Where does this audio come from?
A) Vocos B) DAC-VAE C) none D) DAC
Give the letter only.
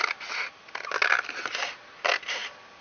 C